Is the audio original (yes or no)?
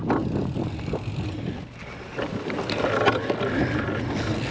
yes